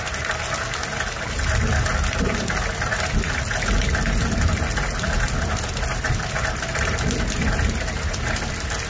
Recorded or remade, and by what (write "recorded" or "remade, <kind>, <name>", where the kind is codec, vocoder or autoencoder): recorded